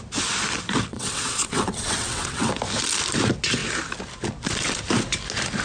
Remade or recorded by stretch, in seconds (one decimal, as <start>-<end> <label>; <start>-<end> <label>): 0.0-0.9 recorded; 0.9-2.5 remade; 2.5-5.6 recorded